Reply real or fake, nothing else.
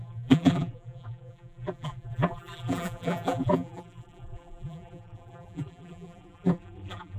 fake